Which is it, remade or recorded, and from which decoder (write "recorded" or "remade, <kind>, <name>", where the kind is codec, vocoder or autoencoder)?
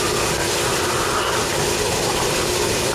recorded